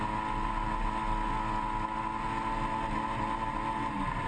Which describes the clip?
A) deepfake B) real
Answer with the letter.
B